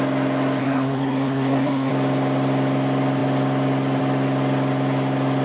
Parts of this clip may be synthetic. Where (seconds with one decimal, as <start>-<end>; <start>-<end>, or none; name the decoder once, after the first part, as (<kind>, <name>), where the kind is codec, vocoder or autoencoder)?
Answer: 0.6-1.9 (codec, SNAC)